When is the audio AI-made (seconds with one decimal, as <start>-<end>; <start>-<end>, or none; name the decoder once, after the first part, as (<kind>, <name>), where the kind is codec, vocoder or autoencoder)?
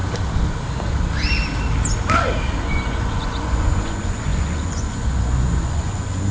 2.7-6.3 (vocoder, Vocos)